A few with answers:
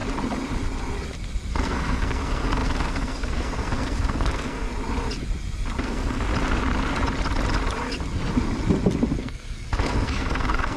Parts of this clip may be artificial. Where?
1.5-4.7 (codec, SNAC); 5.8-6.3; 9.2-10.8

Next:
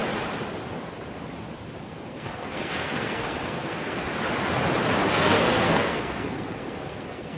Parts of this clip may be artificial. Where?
1.8-4.1 (codec, SNAC); 5.1-7.4